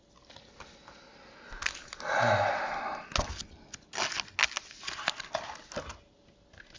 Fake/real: real